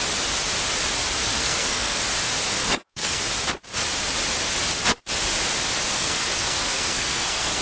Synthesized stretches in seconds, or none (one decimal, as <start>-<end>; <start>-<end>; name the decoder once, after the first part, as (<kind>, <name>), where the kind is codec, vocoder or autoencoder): 1.2-2.0 (codec, SNAC); 2.6-3.2; 5.9-7.6